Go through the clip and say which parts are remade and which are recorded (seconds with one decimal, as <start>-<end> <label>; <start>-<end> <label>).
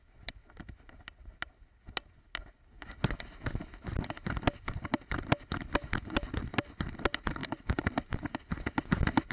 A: 0.0-7.4 recorded; 7.4-8.2 remade; 8.2-9.3 recorded